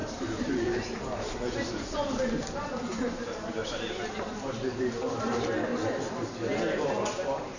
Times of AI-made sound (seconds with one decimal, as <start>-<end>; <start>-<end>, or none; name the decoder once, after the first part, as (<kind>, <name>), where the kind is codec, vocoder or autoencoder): 0.0-3.6 (vocoder, BigVGAN v2); 4.2-5.7